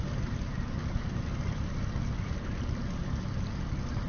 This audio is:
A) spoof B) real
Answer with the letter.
B